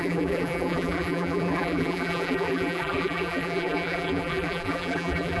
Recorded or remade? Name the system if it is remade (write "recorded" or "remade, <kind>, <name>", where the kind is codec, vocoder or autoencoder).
remade, vocoder, BigVGAN v2